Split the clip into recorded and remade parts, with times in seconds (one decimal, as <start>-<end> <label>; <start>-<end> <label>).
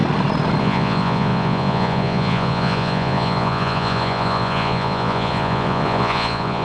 0.0-0.6 recorded; 0.6-6.6 remade